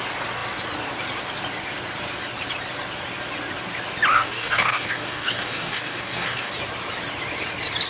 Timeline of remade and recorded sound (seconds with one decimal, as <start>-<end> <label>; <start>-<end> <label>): 0.0-4.1 recorded; 4.1-6.5 remade; 6.5-7.9 recorded

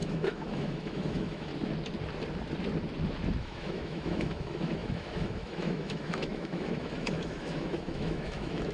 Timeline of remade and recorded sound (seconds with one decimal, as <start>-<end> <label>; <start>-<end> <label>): 0.0-1.5 remade; 1.5-3.4 recorded; 3.4-8.7 remade

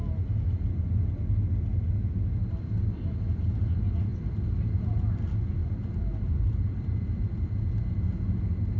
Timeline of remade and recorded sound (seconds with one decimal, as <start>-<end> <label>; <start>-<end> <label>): 0.0-5.6 recorded; 5.6-6.9 remade; 6.9-8.8 recorded

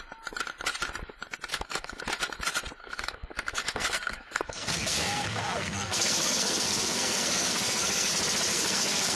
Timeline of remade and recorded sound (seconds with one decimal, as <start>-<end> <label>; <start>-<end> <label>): 0.0-1.5 recorded; 1.5-2.0 remade; 2.0-2.8 recorded; 2.8-8.1 remade; 8.1-8.5 recorded; 8.5-9.2 remade